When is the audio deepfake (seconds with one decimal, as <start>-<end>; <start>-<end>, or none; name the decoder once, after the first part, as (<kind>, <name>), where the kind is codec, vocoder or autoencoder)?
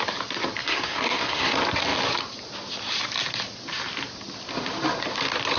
0.6-1.5 (codec, SNAC)